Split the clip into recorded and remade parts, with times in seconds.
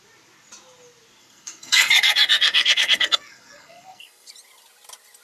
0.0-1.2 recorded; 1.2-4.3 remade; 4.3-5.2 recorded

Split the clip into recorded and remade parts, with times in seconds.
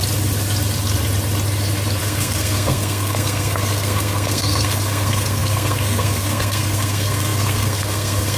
0.0-2.0 recorded; 2.0-8.4 remade